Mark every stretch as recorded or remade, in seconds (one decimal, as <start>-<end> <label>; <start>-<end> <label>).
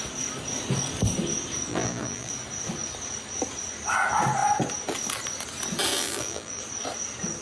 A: 0.0-1.7 recorded; 1.7-2.3 remade; 2.3-5.9 recorded; 5.9-6.6 remade; 6.6-7.4 recorded